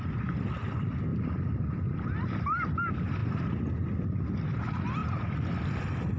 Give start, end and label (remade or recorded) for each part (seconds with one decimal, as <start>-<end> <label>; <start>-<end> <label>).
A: 0.0-1.1 recorded; 1.1-2.0 remade; 2.0-5.0 recorded; 5.0-5.8 remade; 5.8-6.2 recorded